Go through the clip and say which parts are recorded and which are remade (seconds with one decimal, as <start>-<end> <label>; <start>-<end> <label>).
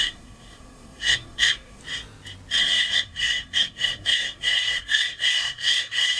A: 0.0-1.8 remade; 1.8-2.6 recorded; 2.6-6.2 remade